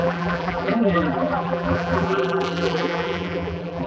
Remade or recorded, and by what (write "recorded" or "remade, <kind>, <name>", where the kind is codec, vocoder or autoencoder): remade, vocoder, BigVGAN v2